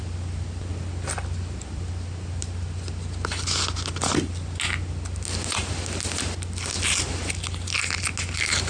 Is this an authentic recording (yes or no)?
yes